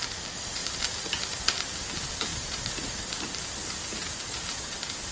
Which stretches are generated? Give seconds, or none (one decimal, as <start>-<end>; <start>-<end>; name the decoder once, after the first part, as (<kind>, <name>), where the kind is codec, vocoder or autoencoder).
2.3-3.1 (vocoder, BigVGAN v2); 3.8-4.6